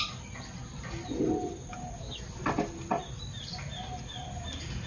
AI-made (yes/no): no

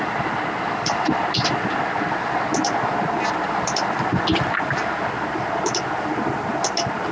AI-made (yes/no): no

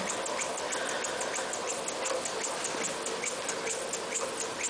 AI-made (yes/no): no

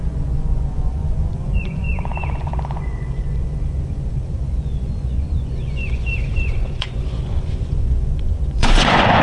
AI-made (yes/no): yes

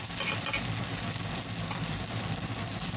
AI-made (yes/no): no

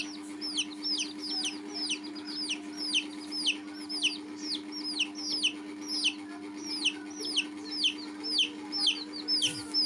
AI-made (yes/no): no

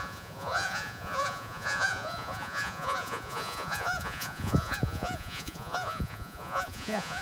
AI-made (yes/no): yes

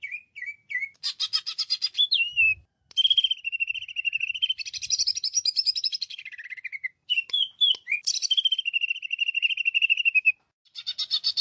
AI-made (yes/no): no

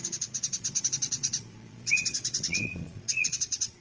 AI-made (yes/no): yes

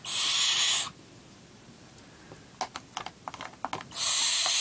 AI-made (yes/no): no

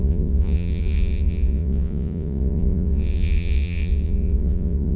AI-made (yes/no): yes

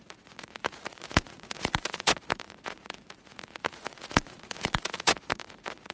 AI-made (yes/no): yes